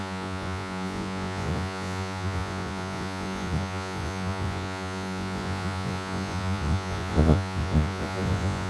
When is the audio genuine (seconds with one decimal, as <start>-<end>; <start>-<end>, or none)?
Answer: none